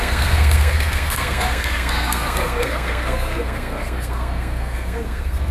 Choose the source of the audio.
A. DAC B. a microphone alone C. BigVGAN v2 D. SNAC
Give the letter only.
D